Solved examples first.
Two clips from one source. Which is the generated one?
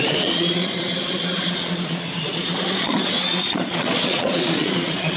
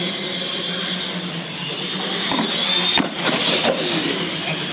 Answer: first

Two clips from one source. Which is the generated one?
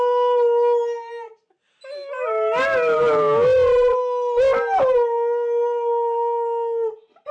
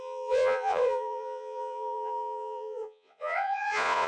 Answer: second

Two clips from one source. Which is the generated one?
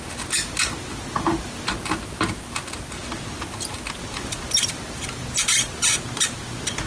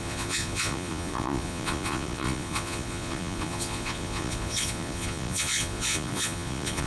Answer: second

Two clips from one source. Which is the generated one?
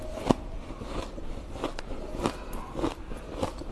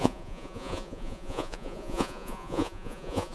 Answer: second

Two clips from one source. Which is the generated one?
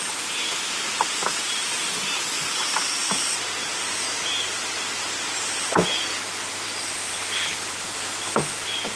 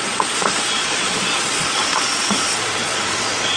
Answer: second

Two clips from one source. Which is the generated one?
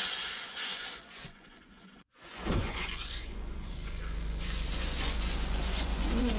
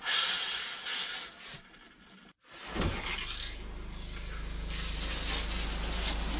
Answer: first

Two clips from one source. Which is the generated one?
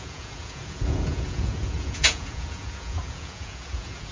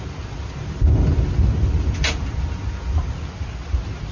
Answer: first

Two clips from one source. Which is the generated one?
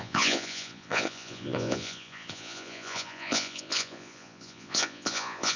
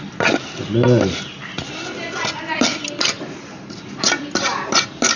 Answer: first